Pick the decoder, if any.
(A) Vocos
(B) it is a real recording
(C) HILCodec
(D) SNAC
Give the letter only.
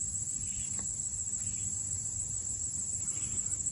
B